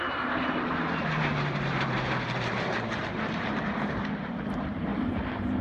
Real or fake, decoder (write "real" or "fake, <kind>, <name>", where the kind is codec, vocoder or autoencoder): fake, vocoder, BigVGAN v2